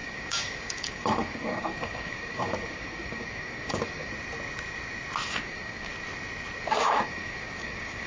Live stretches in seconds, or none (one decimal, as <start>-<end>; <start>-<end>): 4.1-5.3; 5.9-6.6